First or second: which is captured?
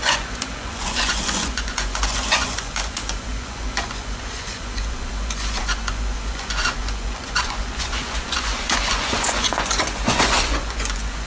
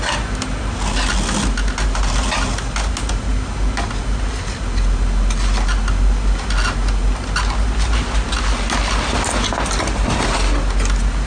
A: second